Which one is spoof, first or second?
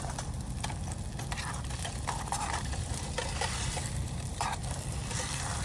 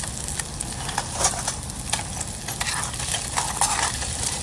first